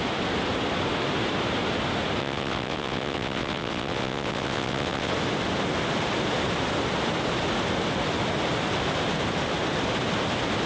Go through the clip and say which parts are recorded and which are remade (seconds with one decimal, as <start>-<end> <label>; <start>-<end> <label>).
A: 0.0-2.2 recorded; 2.2-5.1 remade; 5.1-10.7 recorded